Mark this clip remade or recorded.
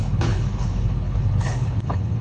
remade